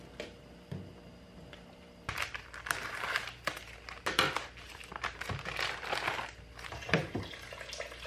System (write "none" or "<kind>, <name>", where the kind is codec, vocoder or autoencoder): none